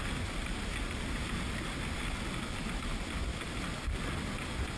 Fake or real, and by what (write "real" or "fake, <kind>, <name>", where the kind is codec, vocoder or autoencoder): real